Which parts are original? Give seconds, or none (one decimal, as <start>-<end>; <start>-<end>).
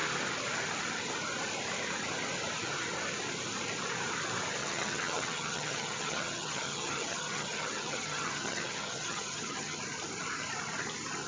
0.0-4.6; 9.8-11.3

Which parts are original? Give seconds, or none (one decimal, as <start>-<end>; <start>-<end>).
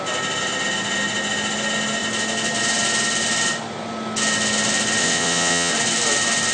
0.0-5.0; 5.7-6.5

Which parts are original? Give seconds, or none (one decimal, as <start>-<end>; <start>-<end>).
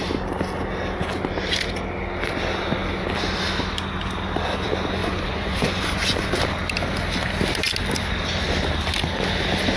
0.0-5.0; 6.3-9.8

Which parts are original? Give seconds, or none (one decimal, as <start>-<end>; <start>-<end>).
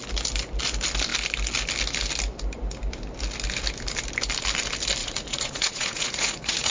0.0-5.0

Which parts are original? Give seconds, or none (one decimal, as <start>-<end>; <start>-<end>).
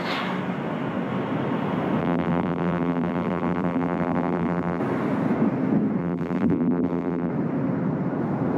0.0-2.0; 4.8-6.0; 7.3-8.6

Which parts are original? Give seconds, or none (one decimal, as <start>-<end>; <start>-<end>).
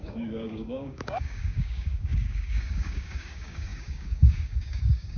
none